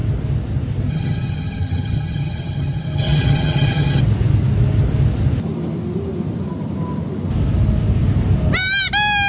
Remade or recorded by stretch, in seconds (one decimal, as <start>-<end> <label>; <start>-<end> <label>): 0.0-0.9 recorded; 0.9-4.0 remade; 4.0-9.3 recorded